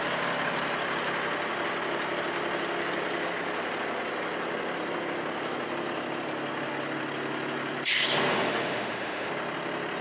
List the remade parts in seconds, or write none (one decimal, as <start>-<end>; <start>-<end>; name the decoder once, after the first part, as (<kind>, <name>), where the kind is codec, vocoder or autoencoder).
8.3-9.3 (autoencoder, DAC-VAE)